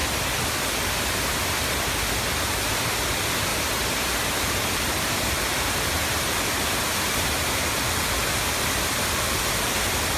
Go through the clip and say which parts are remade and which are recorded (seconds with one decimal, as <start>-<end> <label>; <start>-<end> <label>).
0.0-3.5 recorded; 3.5-8.0 remade; 8.0-10.2 recorded